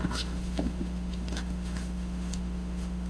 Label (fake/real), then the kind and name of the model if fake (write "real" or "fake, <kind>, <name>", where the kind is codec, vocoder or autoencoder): fake, autoencoder, DAC-VAE